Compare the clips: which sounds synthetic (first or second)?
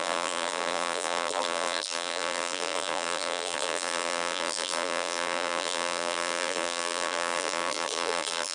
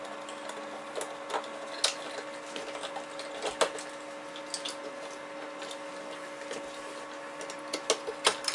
first